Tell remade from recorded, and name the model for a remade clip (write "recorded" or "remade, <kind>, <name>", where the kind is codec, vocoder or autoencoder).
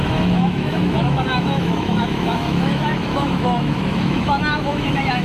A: remade, autoencoder, DAC-VAE